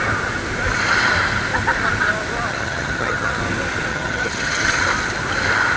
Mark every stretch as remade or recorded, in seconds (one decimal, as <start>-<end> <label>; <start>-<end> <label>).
0.0-2.5 recorded; 2.5-3.4 remade; 3.4-3.9 recorded; 3.9-4.8 remade; 4.8-5.8 recorded